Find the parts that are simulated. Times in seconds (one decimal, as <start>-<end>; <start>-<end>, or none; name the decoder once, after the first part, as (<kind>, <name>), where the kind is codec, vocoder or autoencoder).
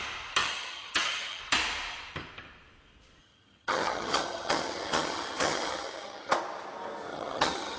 0.4-1.4 (vocoder, HiFi-GAN); 3.2-6.3; 7.1-7.8